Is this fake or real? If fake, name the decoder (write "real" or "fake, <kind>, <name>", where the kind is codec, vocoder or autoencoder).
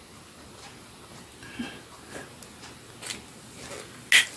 real